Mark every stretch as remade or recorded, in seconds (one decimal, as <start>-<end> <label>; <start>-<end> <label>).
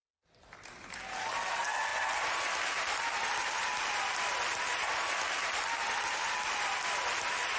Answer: 0.0-7.6 recorded